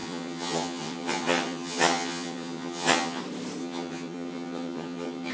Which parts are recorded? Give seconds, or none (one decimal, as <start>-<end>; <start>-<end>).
3.2-3.6